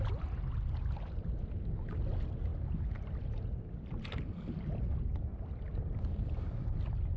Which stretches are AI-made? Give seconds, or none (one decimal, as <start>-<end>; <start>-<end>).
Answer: none